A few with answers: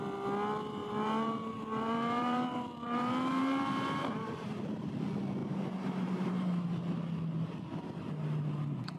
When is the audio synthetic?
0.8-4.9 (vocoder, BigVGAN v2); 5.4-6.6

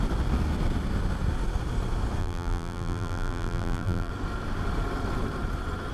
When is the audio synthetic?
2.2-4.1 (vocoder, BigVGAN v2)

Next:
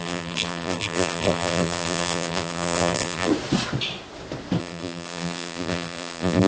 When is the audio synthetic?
0.0-3.3 (vocoder, BigVGAN v2); 4.6-6.5

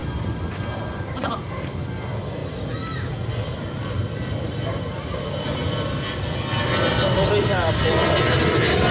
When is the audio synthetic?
0.0-8.9 (vocoder, BigVGAN v2)